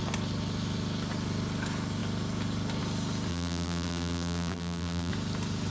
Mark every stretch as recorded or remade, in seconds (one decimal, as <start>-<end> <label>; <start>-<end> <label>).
0.0-3.3 recorded; 3.3-5.1 remade; 5.1-5.7 recorded